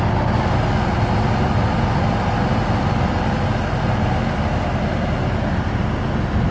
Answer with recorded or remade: recorded